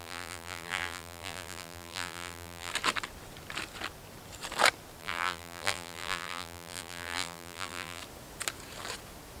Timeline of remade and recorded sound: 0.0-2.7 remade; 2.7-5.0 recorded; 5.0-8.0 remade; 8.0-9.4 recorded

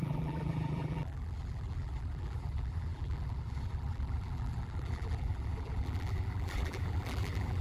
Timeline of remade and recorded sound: 0.0-7.6 remade

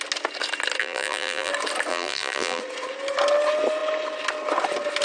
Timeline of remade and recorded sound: 0.0-0.8 recorded; 0.8-1.5 remade; 1.5-1.9 recorded; 1.9-2.6 remade; 2.6-5.0 recorded

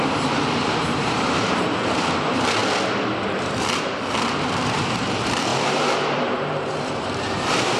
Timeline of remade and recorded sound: 0.0-2.6 remade; 2.6-3.4 recorded; 3.4-7.8 remade

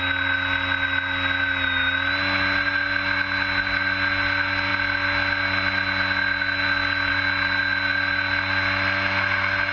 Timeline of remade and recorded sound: 0.0-9.7 recorded

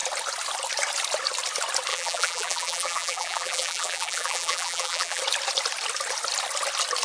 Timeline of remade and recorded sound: 0.0-1.9 recorded; 1.9-5.2 remade; 5.2-7.0 recorded